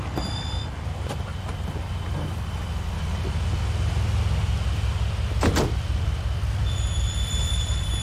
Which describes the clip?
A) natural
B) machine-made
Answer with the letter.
A